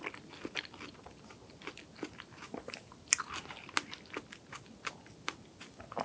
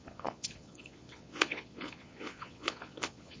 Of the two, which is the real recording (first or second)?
first